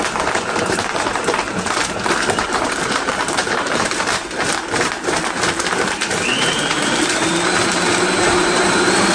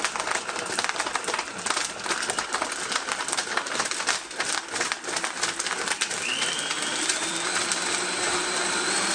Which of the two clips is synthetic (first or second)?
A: first